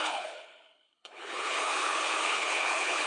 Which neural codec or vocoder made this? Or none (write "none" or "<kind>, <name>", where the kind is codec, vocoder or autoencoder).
codec, HILCodec